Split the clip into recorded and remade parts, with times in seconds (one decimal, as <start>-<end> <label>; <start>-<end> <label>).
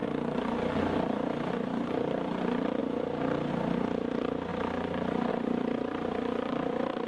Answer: 0.0-1.5 recorded; 1.5-2.8 remade; 2.8-3.5 recorded; 3.5-4.5 remade; 4.5-5.3 recorded; 5.3-7.1 remade